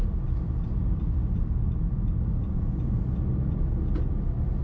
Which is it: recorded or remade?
recorded